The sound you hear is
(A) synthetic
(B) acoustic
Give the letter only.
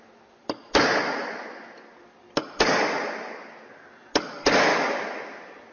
B